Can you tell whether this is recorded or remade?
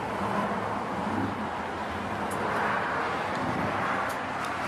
recorded